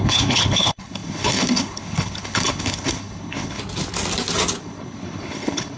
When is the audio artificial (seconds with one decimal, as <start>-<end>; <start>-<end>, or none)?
0.0-3.6; 4.6-5.8